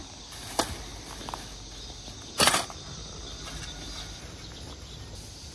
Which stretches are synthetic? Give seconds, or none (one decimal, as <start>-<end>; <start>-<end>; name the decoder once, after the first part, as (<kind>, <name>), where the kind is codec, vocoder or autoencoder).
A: none